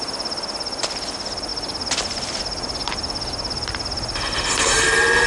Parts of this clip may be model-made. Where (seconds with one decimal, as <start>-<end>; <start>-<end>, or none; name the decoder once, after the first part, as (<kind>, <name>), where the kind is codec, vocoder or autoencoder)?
none